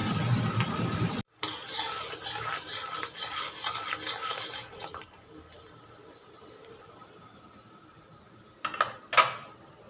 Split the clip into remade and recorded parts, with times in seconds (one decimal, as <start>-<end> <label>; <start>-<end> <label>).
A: 0.0-9.9 recorded